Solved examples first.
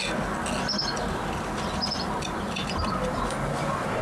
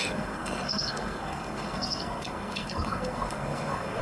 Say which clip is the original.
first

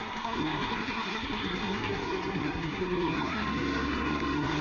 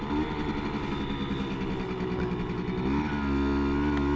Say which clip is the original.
second